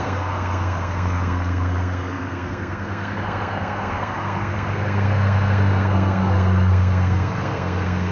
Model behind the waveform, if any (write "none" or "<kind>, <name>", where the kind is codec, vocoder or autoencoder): codec, SNAC